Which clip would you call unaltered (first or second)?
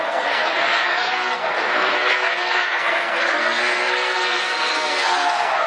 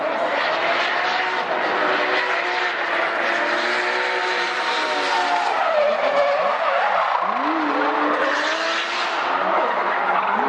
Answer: second